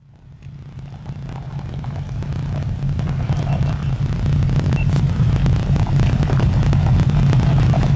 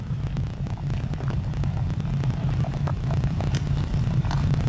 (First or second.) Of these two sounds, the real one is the first